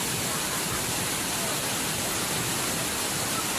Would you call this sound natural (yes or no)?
yes